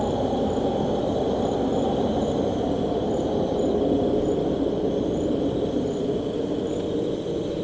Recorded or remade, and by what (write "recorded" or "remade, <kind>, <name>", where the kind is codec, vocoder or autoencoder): recorded